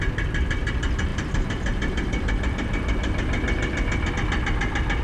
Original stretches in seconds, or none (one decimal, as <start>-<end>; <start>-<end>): 0.0-5.0